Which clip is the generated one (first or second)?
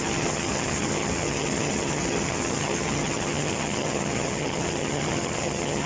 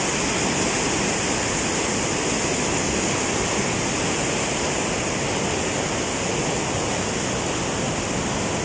first